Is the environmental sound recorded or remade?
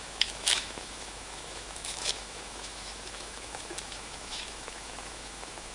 remade